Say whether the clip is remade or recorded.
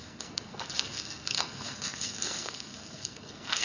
remade